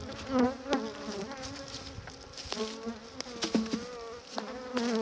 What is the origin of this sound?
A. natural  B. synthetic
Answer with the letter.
A